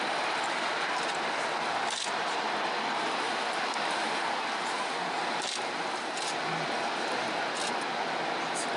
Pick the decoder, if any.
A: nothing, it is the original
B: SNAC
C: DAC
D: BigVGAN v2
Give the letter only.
D